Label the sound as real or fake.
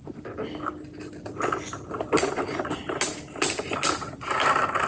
real